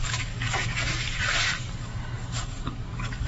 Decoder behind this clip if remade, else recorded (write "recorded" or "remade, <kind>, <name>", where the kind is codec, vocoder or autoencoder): remade, codec, DAC